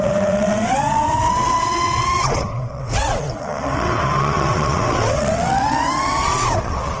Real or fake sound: fake